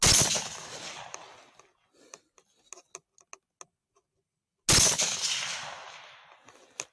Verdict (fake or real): real